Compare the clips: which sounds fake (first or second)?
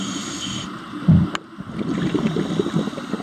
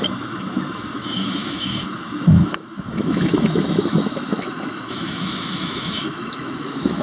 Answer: second